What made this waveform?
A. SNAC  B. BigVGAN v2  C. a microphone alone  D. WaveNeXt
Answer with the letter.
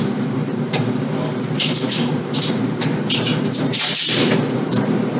B